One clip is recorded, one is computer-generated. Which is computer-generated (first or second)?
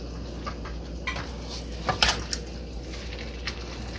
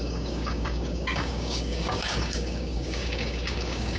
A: second